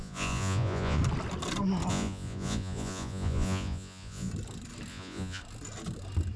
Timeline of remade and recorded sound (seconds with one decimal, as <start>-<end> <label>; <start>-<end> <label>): 0.0-1.0 remade; 1.0-1.9 recorded; 1.9-4.3 remade; 4.3-4.9 recorded; 4.9-5.4 remade; 5.4-6.4 recorded